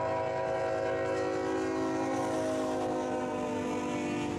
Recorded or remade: recorded